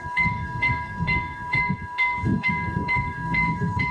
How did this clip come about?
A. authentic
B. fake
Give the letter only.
B